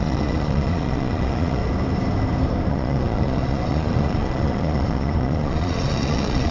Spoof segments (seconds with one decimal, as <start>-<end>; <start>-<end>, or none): 0.0-1.6; 2.7-6.5